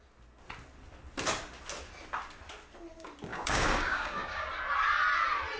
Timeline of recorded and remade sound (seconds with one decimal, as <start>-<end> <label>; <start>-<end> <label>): 0.0-3.3 recorded; 3.3-4.5 remade; 4.5-5.6 recorded